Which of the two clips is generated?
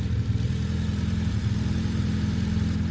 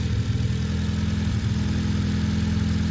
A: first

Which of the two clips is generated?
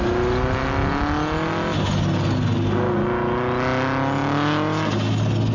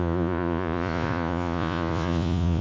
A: second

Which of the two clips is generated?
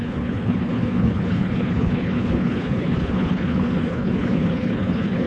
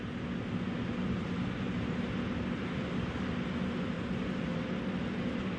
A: first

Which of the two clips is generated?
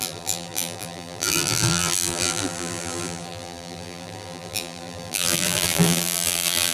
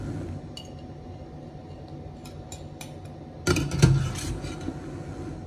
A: first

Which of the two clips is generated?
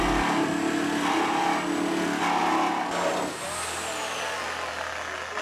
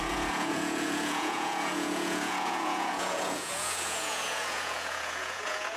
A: second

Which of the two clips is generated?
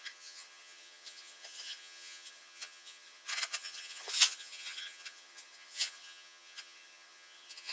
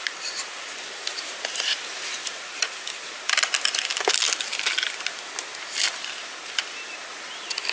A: first